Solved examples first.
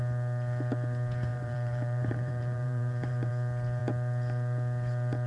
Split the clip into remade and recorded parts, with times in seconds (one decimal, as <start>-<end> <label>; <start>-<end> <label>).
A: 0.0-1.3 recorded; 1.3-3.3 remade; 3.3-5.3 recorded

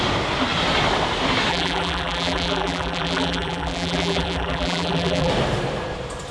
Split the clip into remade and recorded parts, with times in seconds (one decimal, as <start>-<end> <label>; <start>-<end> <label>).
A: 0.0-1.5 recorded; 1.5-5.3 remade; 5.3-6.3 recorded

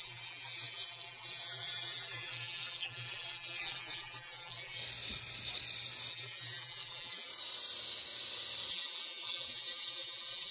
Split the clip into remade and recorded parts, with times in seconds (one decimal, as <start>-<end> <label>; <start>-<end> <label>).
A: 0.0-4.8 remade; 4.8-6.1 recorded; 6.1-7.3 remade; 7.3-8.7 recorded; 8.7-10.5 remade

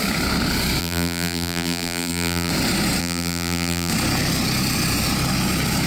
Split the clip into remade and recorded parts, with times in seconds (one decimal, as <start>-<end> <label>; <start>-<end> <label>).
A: 0.0-0.8 recorded; 0.8-2.5 remade; 2.5-3.0 recorded; 3.0-3.9 remade; 3.9-5.9 recorded